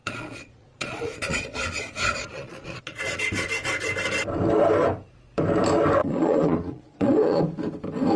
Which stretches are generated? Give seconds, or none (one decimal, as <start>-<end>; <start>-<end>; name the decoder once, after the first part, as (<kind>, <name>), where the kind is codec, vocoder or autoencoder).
0.0-3.2 (vocoder, Vocos); 6.0-7.4